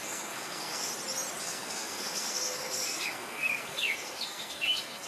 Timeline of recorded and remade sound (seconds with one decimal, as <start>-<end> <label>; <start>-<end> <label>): 0.0-0.9 remade; 0.9-1.4 recorded; 1.4-5.1 remade